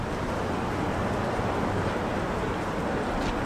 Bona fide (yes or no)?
yes